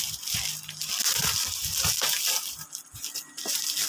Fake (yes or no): no